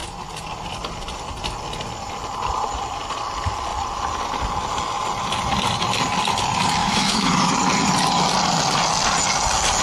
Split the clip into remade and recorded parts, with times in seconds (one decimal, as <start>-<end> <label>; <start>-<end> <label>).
0.0-6.8 recorded; 6.8-7.5 remade; 7.5-9.8 recorded